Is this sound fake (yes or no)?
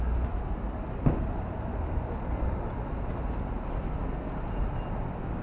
no